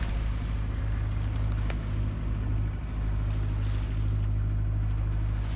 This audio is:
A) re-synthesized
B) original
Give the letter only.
B